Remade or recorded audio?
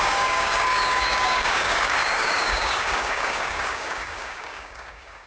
remade